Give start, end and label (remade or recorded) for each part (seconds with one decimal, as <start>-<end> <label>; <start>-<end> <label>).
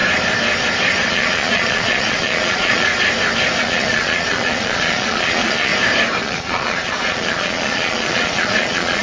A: 0.0-1.1 recorded; 1.1-2.9 remade; 2.9-3.6 recorded; 3.6-5.7 remade; 5.7-6.2 recorded; 6.2-9.0 remade